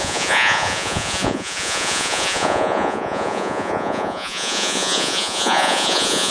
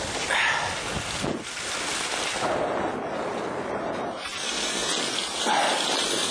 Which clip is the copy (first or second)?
first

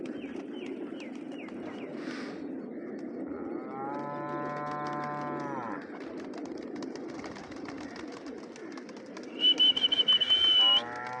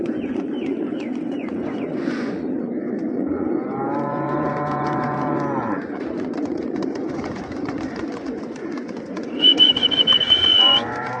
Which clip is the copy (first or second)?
second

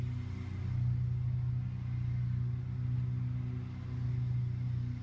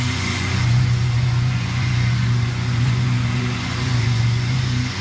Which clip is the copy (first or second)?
second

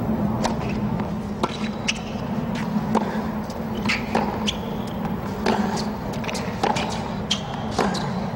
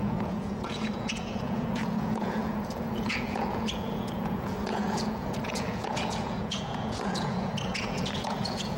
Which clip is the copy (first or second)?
second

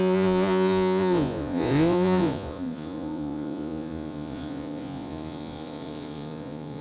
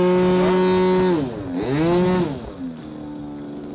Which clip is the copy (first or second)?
first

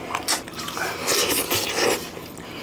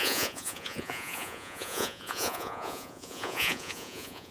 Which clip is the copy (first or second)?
second